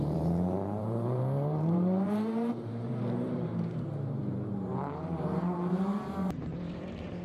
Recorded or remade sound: remade